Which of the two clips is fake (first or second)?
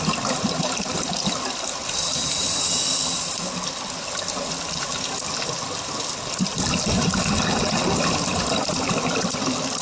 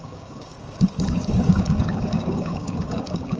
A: second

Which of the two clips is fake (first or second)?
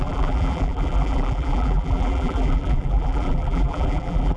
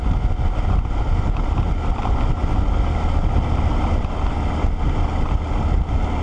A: first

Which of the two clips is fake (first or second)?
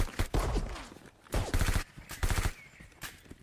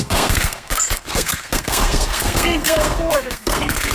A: second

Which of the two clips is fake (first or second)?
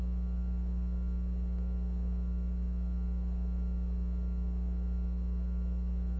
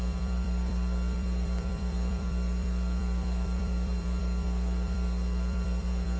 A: second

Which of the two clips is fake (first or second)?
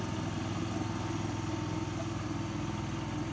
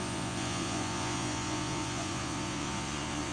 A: second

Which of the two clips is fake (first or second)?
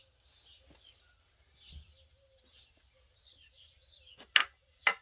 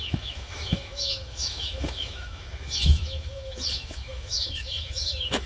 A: second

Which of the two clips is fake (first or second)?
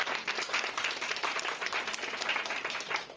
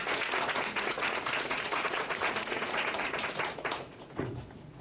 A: second